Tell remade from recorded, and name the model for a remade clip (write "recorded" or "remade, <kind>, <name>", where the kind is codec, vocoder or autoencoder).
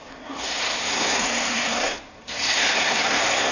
remade, codec, SNAC